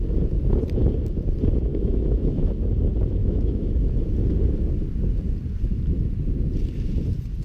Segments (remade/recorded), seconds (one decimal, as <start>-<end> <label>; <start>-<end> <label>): 0.0-1.7 recorded; 1.7-2.5 remade; 2.5-3.2 recorded; 3.2-3.7 remade; 3.7-7.4 recorded